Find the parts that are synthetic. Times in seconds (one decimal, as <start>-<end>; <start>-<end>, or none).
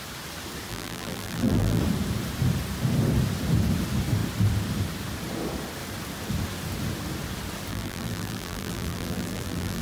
0.7-1.8; 7.7-9.8